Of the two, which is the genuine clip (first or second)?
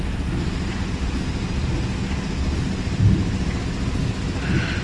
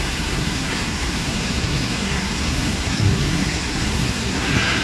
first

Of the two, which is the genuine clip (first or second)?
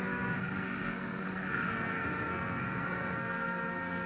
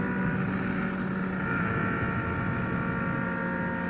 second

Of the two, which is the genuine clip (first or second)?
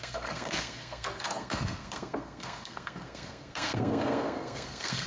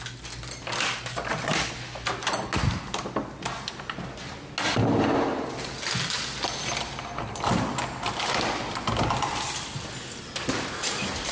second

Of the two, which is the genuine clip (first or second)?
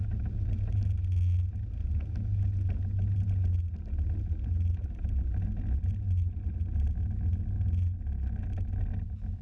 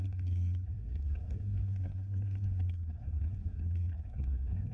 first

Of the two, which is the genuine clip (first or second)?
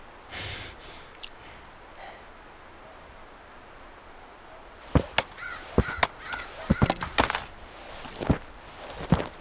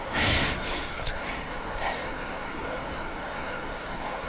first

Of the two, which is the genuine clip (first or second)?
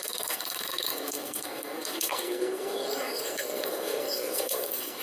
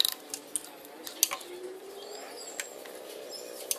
second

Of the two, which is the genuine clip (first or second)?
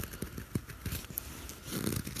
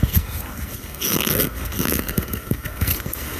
first